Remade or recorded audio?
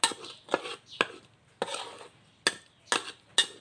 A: recorded